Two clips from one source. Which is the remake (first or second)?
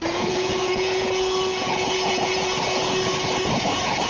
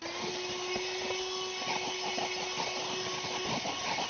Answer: first